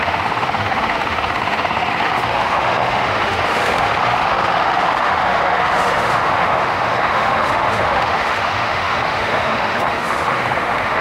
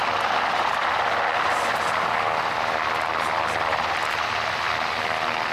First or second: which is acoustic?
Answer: second